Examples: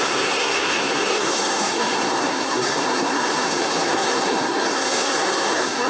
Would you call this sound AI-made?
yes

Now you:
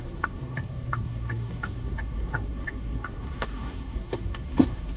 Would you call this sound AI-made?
yes